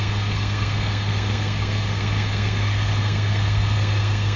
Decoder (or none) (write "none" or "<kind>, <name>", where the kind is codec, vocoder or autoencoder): codec, SNAC